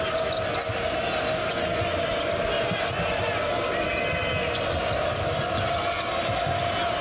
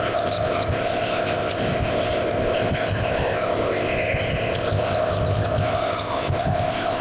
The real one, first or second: first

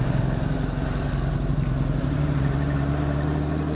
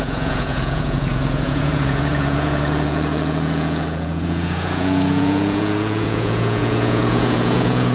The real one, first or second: first